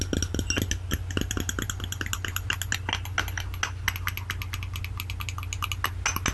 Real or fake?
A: real